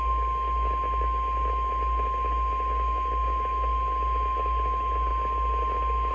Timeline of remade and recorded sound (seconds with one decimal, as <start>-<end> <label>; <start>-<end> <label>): 0.0-6.1 recorded